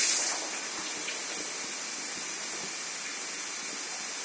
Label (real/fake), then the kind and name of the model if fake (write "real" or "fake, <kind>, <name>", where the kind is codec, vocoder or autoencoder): real